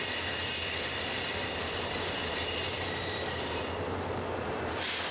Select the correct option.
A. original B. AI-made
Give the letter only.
A